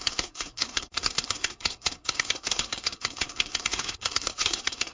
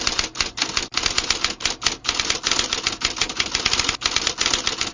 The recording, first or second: second